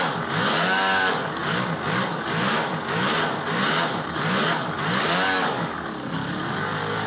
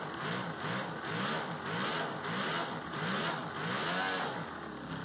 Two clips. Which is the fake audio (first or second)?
first